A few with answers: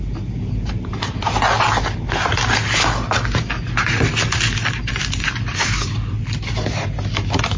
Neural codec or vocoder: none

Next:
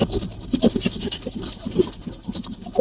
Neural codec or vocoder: none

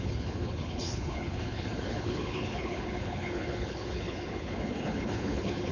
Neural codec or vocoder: codec, HILCodec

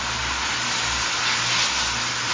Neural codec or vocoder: none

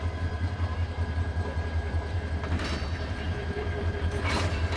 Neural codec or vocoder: vocoder, BigVGAN v2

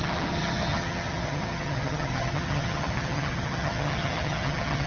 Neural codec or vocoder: vocoder, HiFi-GAN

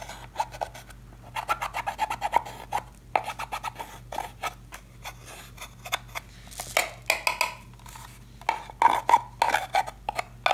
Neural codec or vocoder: none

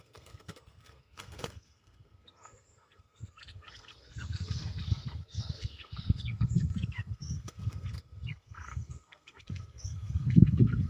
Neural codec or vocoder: codec, SNAC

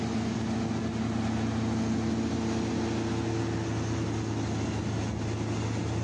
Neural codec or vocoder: none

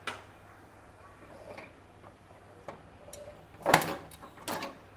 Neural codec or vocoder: none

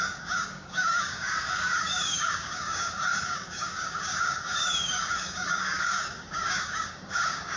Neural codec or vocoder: codec, DAC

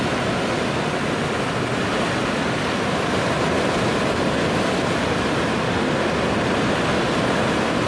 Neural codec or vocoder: none